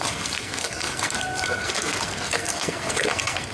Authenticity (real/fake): fake